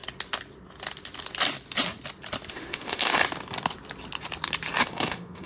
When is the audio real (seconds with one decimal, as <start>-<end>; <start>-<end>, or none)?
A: 0.0-2.5; 3.1-4.8